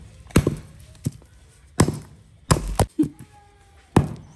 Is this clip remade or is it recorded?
recorded